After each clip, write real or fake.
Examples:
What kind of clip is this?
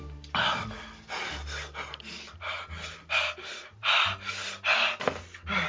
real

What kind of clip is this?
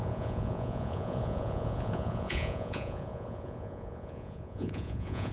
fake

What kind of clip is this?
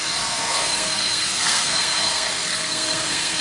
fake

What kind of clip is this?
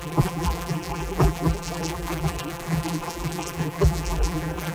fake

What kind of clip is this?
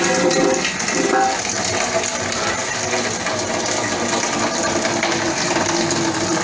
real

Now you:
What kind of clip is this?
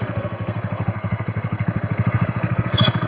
fake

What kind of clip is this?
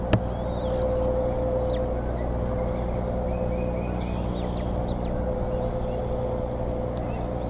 real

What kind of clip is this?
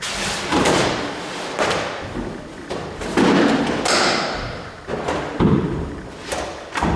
fake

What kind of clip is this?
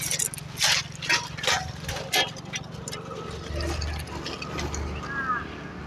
real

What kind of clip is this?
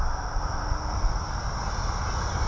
real